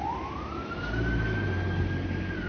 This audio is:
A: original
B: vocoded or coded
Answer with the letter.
A